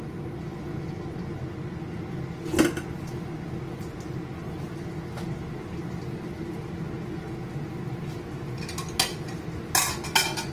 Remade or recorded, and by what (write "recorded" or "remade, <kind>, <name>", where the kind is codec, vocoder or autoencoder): recorded